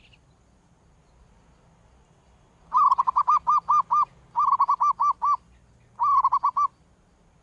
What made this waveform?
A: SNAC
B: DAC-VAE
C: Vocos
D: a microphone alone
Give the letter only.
D